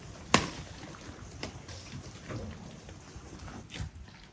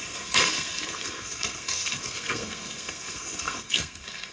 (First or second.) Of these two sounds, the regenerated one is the second